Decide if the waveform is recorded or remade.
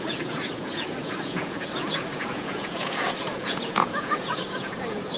remade